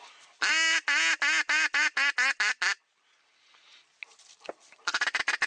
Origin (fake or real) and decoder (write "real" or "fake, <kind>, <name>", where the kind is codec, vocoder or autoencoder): real